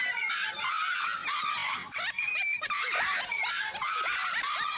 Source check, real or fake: real